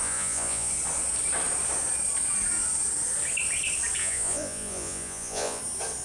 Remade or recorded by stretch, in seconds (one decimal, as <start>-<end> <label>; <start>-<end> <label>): 0.0-0.7 remade; 0.7-4.0 recorded; 4.0-5.6 remade; 5.6-6.0 recorded